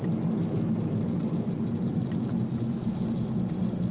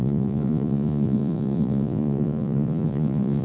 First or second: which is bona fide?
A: first